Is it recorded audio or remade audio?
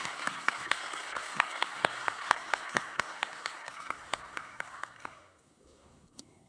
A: remade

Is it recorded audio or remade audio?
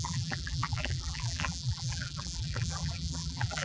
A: remade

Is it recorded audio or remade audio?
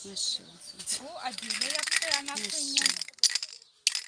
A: recorded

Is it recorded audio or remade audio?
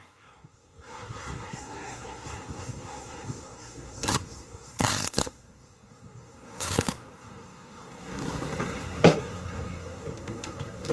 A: remade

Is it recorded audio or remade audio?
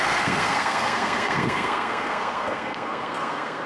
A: remade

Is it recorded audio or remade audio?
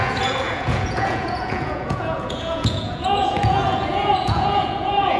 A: remade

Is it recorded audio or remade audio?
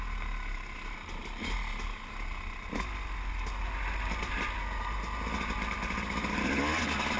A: recorded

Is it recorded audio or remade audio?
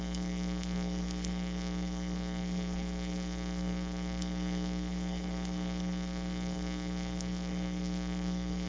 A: remade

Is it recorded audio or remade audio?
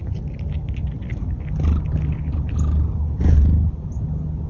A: recorded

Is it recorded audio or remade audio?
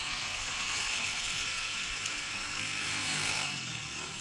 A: remade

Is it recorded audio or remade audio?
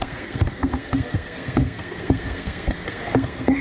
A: remade